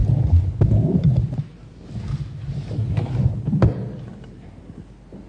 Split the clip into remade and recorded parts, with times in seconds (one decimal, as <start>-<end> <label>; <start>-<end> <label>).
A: 0.0-5.3 recorded